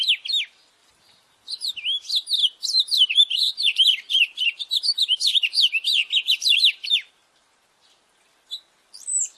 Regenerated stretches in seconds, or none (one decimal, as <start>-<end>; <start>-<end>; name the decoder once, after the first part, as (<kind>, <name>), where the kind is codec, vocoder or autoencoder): 0.8-1.7 (vocoder, BigVGAN v2); 2.4-7.1

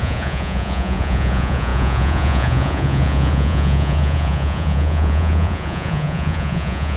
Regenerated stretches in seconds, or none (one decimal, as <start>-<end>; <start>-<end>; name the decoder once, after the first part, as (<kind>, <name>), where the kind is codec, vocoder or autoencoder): 0.0-7.0 (vocoder, Vocos)